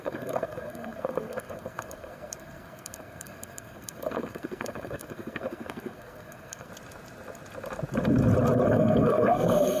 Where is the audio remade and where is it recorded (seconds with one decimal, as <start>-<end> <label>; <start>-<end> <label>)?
0.0-6.7 remade; 6.7-8.7 recorded; 8.7-9.8 remade